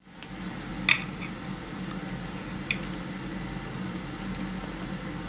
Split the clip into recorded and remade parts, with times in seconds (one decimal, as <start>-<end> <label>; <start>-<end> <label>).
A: 0.0-5.3 recorded